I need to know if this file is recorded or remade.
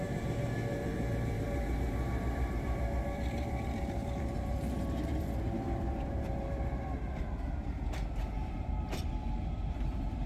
remade